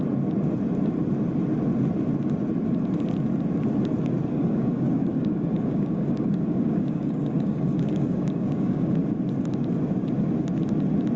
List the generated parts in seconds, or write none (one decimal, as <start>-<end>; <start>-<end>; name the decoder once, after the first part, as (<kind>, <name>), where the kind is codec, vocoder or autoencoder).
4.3-9.0 (codec, DAC)

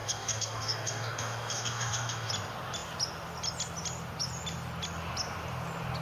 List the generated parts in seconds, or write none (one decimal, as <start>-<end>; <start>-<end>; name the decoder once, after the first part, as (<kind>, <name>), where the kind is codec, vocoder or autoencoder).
0.0-2.3 (codec, DAC)

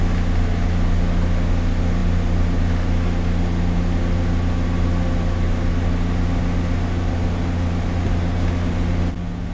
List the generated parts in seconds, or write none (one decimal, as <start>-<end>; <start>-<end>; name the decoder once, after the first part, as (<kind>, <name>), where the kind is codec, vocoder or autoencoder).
none

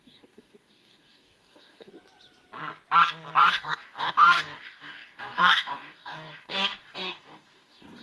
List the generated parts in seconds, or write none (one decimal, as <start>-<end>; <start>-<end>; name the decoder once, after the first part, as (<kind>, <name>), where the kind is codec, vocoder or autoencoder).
0.0-1.9 (codec, DAC); 3.4-8.0

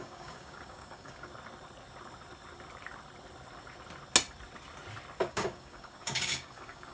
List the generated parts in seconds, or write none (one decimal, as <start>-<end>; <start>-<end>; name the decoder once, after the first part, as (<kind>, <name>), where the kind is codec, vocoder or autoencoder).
0.0-1.3 (codec, DAC); 5.2-6.9

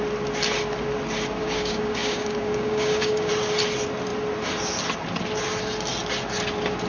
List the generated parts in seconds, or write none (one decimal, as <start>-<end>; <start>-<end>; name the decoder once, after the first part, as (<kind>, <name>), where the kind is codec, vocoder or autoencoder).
1.4-3.3 (codec, DAC)

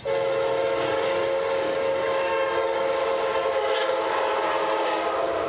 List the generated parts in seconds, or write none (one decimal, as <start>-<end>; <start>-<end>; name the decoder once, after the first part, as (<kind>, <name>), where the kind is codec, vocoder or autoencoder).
0.6-3.9 (codec, DAC); 4.6-5.5

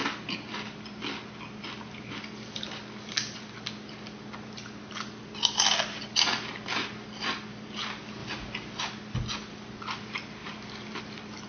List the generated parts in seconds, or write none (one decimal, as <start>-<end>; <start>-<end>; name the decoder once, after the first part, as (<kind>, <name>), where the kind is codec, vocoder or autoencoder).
none